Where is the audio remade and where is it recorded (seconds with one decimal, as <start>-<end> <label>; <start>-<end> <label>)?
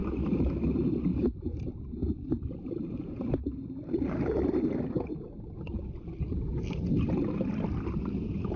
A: 0.0-0.5 remade; 0.5-1.1 recorded; 1.1-5.6 remade; 5.6-8.6 recorded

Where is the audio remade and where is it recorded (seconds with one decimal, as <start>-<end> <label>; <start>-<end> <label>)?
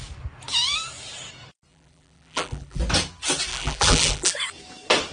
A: 0.0-1.7 recorded; 1.7-2.8 remade; 2.8-3.5 recorded; 3.5-4.3 remade; 4.3-5.1 recorded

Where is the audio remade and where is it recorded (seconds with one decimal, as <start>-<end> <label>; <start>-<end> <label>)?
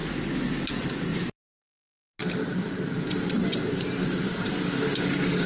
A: 0.0-1.1 recorded; 1.1-1.7 remade; 1.7-3.1 recorded; 3.1-5.0 remade; 5.0-5.5 recorded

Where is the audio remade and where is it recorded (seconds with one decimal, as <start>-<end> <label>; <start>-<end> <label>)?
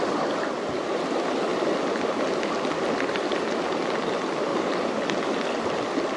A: 0.0-1.5 recorded; 1.5-3.2 remade; 3.2-4.5 recorded; 4.5-5.2 remade; 5.2-6.2 recorded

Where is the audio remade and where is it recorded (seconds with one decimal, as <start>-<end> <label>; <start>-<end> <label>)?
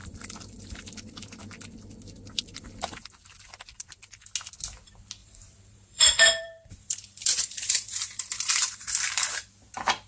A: 0.0-0.8 remade; 0.8-5.2 recorded; 5.2-9.5 remade; 9.5-10.1 recorded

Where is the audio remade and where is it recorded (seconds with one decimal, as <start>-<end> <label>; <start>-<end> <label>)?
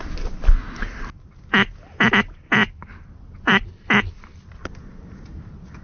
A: 0.0-2.6 recorded; 2.6-4.7 remade; 4.7-5.8 recorded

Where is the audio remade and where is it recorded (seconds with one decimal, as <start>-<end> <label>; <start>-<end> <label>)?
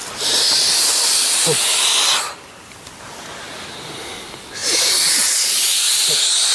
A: 0.0-6.5 recorded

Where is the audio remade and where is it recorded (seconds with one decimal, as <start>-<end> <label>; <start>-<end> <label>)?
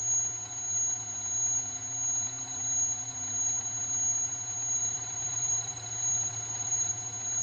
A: 0.0-4.8 recorded; 4.8-6.9 remade; 6.9-7.4 recorded